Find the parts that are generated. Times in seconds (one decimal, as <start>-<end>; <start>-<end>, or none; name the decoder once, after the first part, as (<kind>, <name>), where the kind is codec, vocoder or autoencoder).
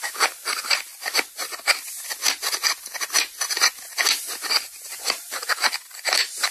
0.0-0.9 (vocoder, BigVGAN v2); 4.8-6.5